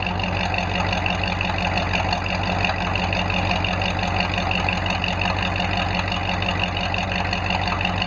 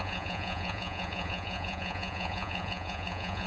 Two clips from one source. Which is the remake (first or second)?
second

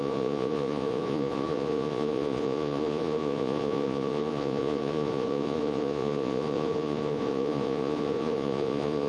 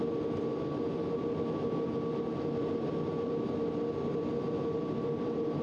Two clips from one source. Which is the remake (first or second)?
first